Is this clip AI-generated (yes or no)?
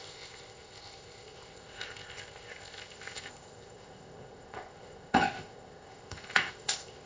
yes